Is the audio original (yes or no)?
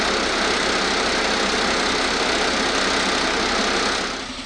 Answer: yes